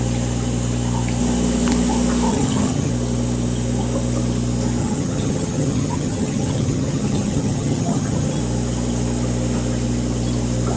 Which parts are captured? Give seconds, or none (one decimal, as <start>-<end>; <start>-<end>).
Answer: 0.0-2.3; 2.9-4.8; 8.4-10.8

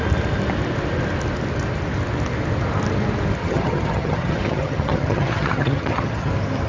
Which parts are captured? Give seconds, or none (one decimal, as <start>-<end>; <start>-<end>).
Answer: 0.0-3.4; 6.3-6.7

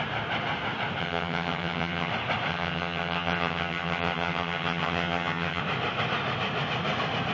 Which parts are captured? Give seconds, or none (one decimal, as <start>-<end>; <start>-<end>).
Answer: 0.0-1.0; 2.1-2.5; 5.6-7.3

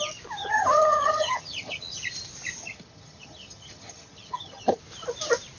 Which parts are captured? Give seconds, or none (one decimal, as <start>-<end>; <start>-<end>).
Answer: 0.0-0.4; 2.0-2.6; 4.8-5.6

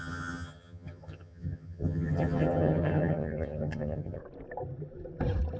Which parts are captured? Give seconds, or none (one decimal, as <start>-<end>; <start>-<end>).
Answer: 4.2-5.6

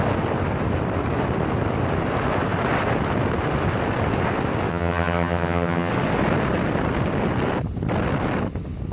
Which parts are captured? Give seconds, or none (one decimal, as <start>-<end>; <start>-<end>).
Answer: 0.0-4.7; 5.9-8.9

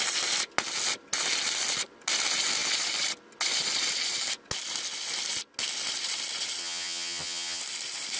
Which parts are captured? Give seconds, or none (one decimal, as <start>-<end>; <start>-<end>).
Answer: 0.0-6.6; 7.6-8.2

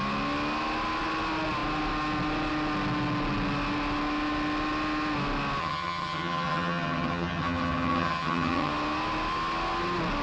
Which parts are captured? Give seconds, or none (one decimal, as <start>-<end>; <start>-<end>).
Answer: 0.0-5.6; 8.7-10.2